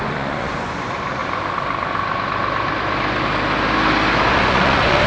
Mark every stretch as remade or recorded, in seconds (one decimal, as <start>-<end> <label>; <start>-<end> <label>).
0.0-1.2 remade; 1.2-4.3 recorded; 4.3-5.1 remade